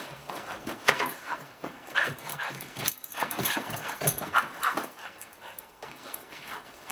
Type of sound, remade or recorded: remade